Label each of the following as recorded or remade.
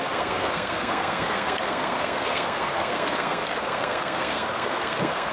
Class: remade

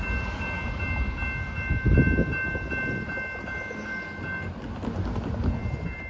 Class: recorded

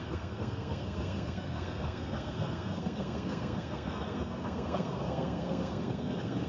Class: remade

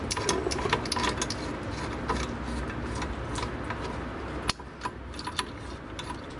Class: recorded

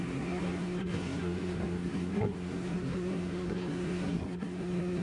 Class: remade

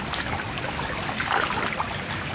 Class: recorded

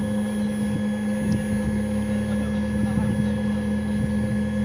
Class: recorded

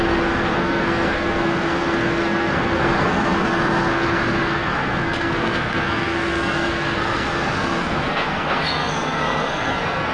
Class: remade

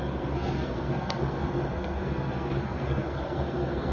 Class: remade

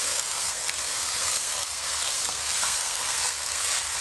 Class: remade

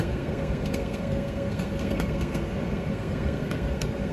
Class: remade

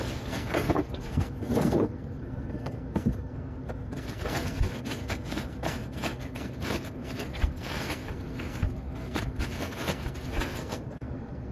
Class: remade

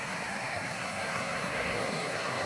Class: remade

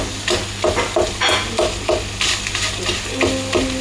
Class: recorded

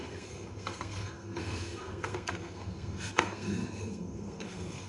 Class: remade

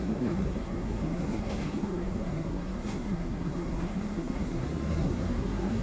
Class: remade